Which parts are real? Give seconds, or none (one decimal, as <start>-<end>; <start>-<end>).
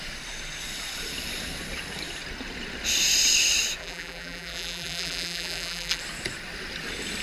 0.0-3.8; 6.0-7.2